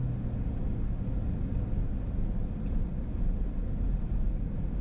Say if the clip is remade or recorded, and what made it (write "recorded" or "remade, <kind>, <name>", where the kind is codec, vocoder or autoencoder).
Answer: recorded